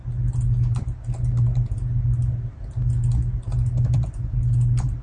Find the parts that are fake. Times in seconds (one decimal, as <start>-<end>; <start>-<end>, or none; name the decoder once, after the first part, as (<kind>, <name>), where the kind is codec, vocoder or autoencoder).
none